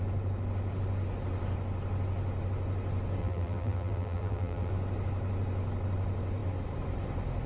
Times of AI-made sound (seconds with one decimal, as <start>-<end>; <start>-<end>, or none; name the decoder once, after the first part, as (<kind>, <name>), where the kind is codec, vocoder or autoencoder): 3.2-4.7 (vocoder, BigVGAN v2)